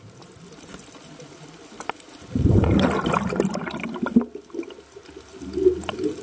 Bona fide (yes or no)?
yes